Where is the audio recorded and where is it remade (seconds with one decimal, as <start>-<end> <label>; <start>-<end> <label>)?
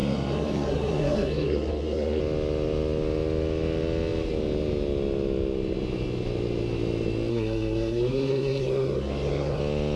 0.0-2.2 remade; 2.2-7.3 recorded; 7.3-9.6 remade; 9.6-10.0 recorded